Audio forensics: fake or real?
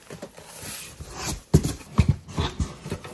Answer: real